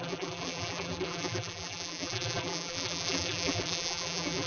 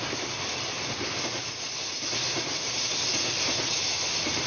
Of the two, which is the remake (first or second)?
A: first